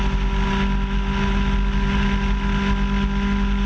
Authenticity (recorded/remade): recorded